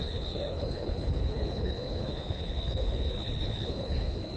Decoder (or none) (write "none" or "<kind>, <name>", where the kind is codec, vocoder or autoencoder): codec, HILCodec